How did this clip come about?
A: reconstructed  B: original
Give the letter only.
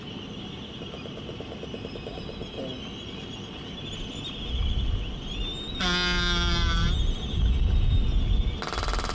B